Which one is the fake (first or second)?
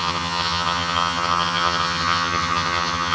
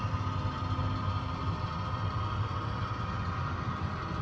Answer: first